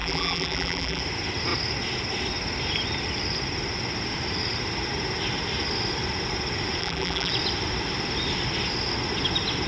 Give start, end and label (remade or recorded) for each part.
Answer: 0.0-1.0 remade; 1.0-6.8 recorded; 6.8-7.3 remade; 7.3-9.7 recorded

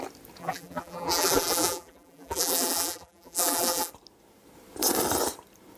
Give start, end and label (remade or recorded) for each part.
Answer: 0.0-0.4 recorded; 0.4-3.9 remade; 3.9-5.8 recorded

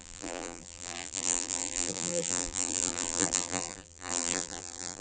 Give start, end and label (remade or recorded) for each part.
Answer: 0.0-5.0 remade

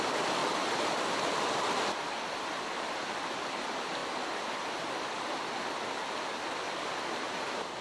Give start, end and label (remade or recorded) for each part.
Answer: 0.0-0.4 remade; 0.4-1.7 recorded; 1.7-4.0 remade; 4.0-6.8 recorded; 6.8-7.8 remade

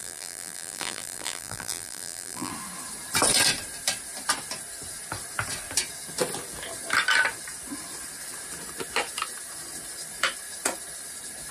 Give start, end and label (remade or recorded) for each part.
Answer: 0.0-2.5 remade; 2.5-11.5 recorded

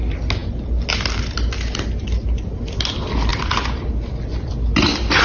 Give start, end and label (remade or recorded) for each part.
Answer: 0.0-3.3 recorded; 3.3-3.9 remade; 3.9-5.2 recorded